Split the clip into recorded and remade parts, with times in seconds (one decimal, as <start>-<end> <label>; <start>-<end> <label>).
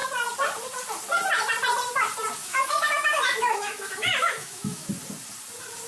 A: 0.0-2.4 recorded; 2.4-4.9 remade; 4.9-5.9 recorded